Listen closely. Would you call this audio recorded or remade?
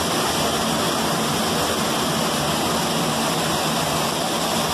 recorded